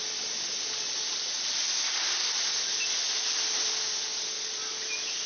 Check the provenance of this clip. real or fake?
real